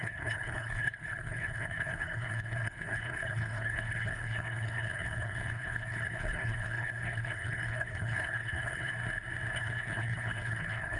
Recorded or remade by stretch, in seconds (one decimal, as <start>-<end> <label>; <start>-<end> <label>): 0.0-8.9 remade; 8.9-9.6 recorded; 9.6-11.0 remade